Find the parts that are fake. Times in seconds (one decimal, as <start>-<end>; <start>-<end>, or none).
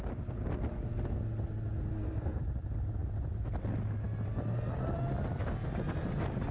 1.9-2.4